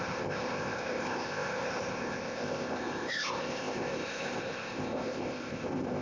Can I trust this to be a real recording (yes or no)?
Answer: no